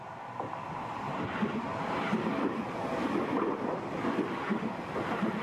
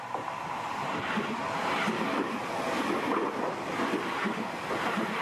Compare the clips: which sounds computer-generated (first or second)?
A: first